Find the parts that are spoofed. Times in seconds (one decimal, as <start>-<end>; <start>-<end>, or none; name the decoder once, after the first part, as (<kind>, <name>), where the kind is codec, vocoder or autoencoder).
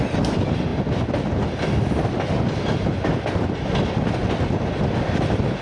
none